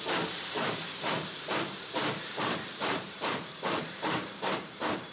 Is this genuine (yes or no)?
no